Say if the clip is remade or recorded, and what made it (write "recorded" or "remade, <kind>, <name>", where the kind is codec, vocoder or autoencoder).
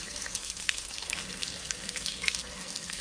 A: remade, codec, SNAC